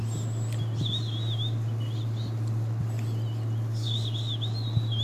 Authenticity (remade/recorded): recorded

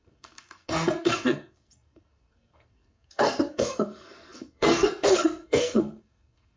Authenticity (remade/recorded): remade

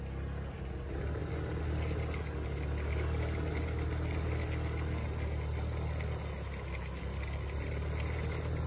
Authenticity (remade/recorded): recorded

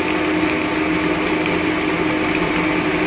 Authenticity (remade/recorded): recorded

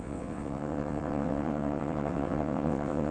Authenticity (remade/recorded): remade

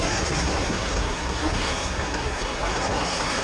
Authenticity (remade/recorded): remade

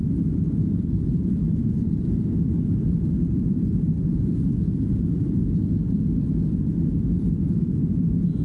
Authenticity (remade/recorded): remade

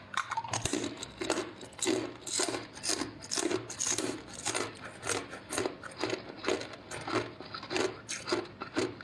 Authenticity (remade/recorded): recorded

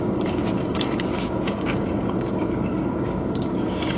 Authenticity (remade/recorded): remade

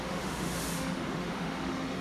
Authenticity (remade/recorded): remade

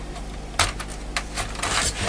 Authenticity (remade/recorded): recorded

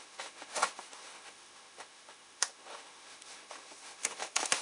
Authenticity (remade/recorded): remade